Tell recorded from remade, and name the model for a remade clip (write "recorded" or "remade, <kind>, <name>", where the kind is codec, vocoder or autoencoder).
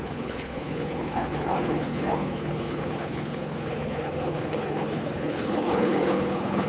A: remade, codec, HILCodec